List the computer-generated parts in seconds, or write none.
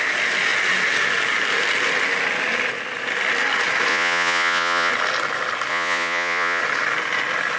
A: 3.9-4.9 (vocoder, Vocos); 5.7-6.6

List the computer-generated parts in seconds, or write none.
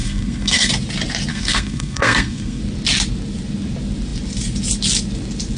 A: 0.0-0.7 (codec, SNAC); 1.3-2.6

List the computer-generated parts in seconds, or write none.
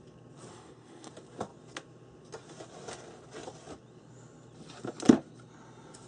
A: 0.5-1.1 (codec, SNAC)